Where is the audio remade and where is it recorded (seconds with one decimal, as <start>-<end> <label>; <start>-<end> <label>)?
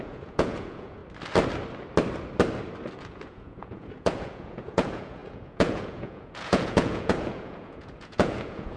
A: 0.0-1.0 remade; 1.0-3.0 recorded; 3.0-8.8 remade